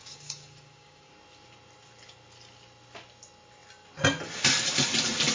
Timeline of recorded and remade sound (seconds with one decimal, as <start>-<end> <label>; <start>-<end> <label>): 0.0-1.1 remade; 1.1-5.3 recorded